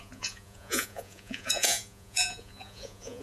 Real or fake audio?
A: fake